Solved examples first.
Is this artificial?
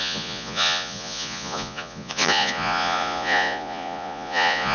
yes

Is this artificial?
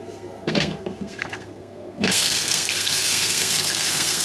yes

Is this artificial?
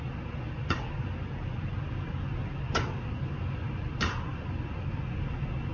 no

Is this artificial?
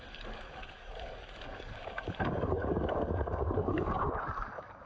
yes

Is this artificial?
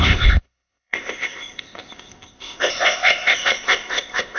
yes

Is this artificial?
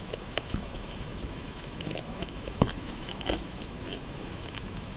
yes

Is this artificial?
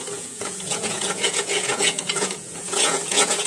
yes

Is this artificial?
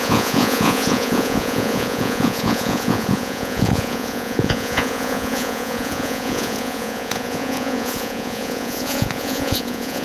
yes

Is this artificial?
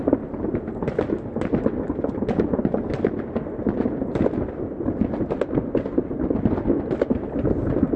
no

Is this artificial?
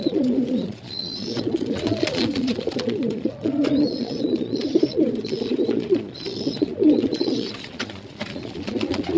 yes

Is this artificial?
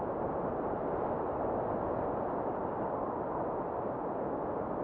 no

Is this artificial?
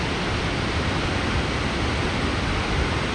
no